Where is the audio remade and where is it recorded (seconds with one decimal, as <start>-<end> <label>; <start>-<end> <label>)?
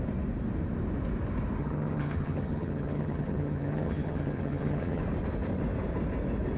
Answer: 0.0-1.6 recorded; 1.6-5.0 remade; 5.0-6.6 recorded